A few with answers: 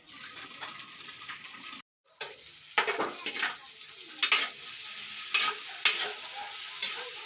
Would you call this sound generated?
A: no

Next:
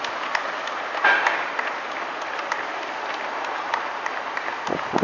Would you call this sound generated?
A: no